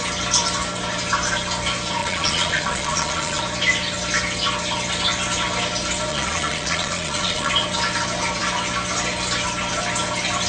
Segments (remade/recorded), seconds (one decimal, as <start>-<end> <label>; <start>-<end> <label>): 0.0-2.0 recorded; 2.0-3.4 remade; 3.4-6.1 recorded; 6.1-7.5 remade; 7.5-10.5 recorded